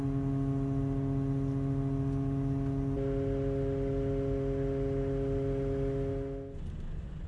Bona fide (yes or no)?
yes